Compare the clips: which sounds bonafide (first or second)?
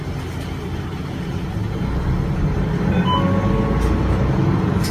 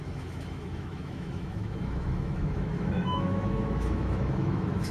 first